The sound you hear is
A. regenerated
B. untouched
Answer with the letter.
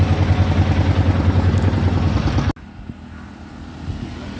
B